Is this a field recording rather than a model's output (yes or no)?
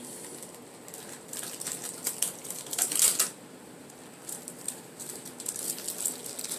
yes